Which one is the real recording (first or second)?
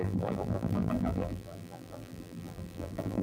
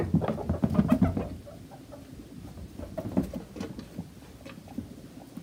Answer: second